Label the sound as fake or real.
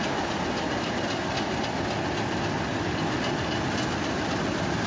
real